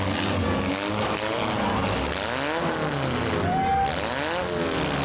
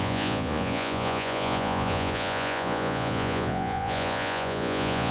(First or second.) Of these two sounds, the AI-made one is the second